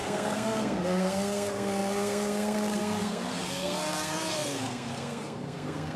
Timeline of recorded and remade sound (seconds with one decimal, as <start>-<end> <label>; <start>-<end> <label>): 0.0-6.0 remade